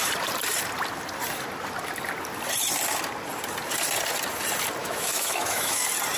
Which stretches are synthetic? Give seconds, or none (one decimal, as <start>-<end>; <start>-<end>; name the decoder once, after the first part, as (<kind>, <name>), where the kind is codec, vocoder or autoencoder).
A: 4.8-5.8 (autoencoder, DAC-VAE)